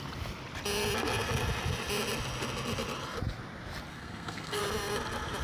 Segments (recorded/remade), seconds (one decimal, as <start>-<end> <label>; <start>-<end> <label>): 0.0-3.9 recorded; 3.9-4.6 remade; 4.6-5.4 recorded